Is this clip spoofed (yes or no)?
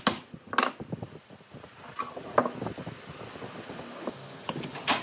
no